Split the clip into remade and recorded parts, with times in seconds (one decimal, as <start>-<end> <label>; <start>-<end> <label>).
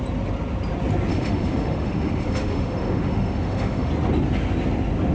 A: 0.0-1.1 recorded; 1.1-3.9 remade; 3.9-5.1 recorded